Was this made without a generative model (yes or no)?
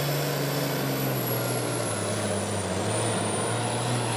yes